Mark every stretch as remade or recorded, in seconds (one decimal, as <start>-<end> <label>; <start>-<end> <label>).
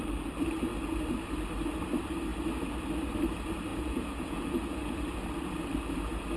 0.0-3.7 recorded; 3.7-5.0 remade; 5.0-6.4 recorded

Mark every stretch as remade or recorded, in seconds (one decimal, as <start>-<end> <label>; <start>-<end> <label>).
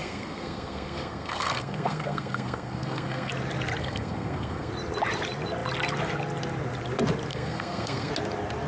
0.0-3.3 remade; 3.3-3.8 recorded; 3.8-4.7 remade; 4.7-7.3 recorded; 7.3-8.1 remade; 8.1-8.7 recorded